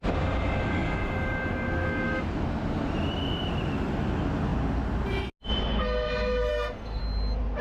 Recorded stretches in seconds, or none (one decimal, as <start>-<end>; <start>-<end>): 0.0-6.5; 7.0-7.6